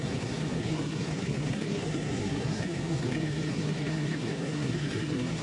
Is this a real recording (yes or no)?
no